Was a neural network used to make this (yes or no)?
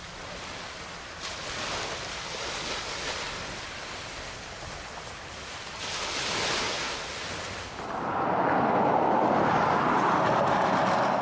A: no